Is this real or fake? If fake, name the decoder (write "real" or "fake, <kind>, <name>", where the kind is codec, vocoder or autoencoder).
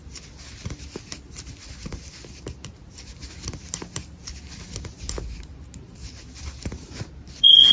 real